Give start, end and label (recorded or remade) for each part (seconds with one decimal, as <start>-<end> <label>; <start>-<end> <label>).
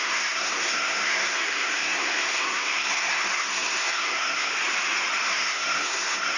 0.0-4.5 remade; 4.5-5.3 recorded; 5.3-6.4 remade